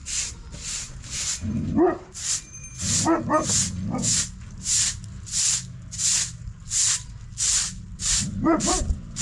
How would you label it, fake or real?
real